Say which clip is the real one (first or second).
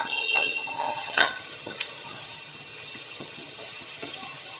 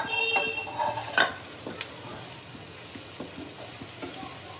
second